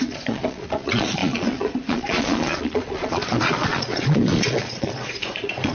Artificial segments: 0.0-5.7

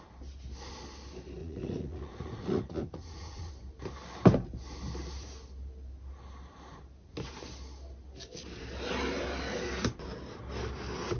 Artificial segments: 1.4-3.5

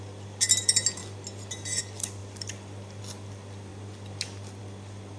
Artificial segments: none

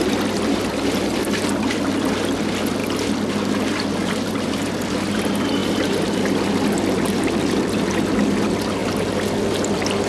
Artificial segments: none

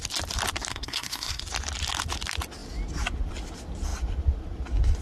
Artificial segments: 0.7-1.4

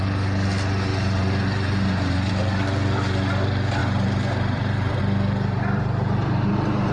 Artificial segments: 0.9-2.3; 3.8-5.0; 6.2-6.9

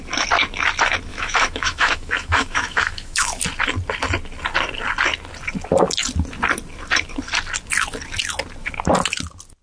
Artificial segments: 1.1-3.4